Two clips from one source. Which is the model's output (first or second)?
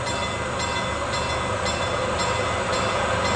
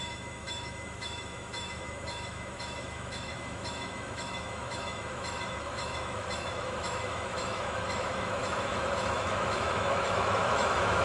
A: second